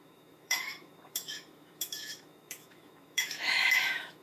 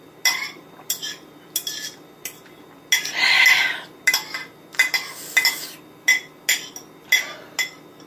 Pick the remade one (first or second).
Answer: first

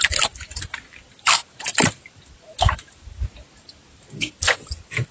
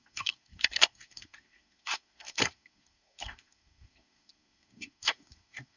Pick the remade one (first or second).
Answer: second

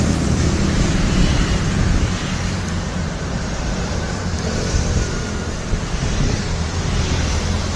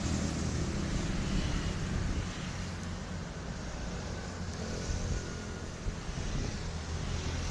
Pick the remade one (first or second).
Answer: first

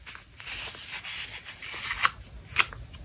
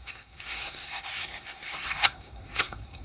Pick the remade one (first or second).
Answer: second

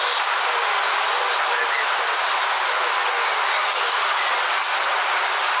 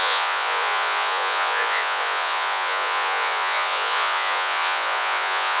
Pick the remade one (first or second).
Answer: second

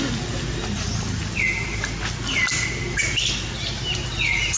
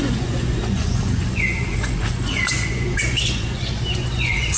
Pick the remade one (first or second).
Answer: second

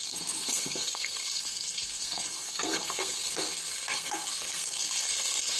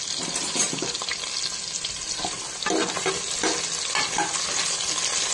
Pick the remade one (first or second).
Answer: first